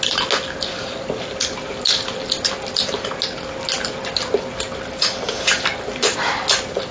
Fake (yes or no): no